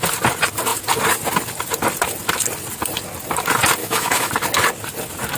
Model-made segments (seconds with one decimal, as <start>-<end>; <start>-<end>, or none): 3.8-4.3